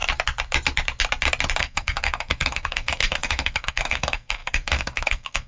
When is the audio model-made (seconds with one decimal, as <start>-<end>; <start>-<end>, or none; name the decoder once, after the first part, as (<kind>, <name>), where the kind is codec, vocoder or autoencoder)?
1.6-5.5 (codec, SNAC)